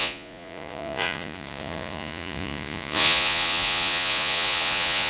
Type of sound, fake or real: fake